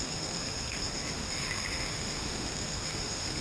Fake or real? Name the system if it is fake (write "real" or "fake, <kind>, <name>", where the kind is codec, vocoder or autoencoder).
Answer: fake, autoencoder, DAC-VAE